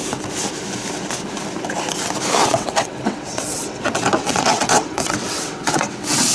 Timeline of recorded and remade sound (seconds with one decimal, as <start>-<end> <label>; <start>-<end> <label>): 0.0-2.4 recorded; 2.4-6.3 remade